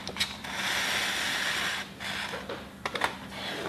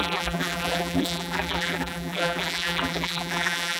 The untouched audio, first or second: first